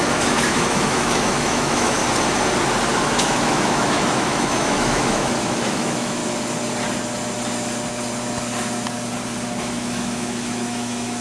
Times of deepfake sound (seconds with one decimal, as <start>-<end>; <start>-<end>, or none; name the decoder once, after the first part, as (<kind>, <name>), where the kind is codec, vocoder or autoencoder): 0.0-2.0 (autoencoder, DAC-VAE); 3.0-6.2; 9.6-11.2